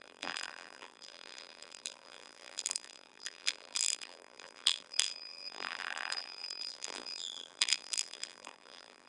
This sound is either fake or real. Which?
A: fake